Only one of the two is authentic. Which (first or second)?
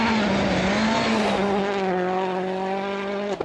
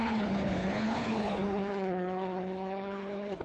first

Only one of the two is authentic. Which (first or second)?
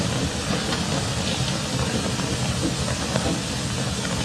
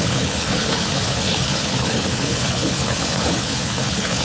first